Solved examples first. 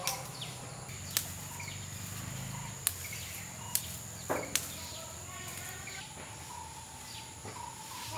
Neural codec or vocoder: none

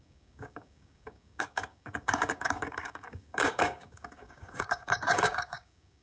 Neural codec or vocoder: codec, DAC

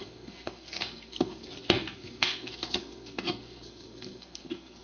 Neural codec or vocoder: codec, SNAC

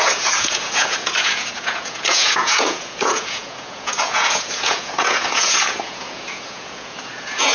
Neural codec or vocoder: vocoder, Vocos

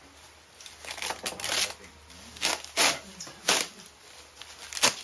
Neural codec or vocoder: none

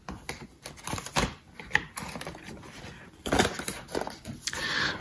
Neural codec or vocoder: none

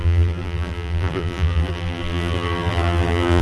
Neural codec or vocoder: vocoder, BigVGAN v2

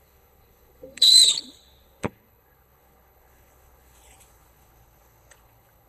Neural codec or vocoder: codec, HILCodec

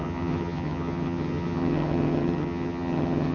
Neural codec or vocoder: vocoder, HiFi-GAN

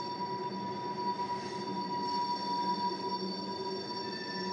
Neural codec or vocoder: none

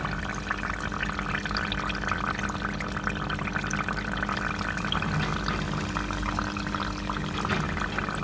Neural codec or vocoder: none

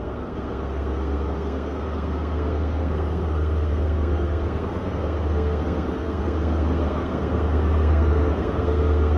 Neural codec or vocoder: codec, SNAC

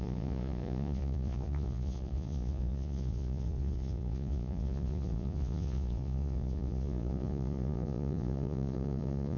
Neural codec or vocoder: vocoder, Vocos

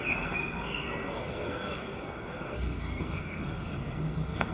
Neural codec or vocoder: codec, SNAC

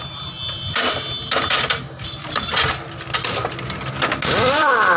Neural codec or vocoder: none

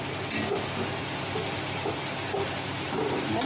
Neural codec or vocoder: none